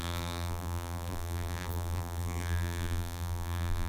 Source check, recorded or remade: remade